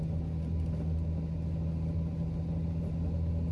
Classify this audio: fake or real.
real